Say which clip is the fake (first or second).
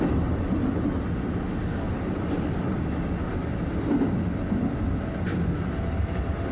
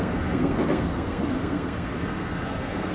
second